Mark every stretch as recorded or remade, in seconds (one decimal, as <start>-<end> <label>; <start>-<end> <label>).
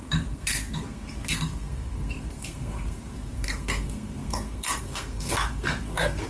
0.0-6.3 remade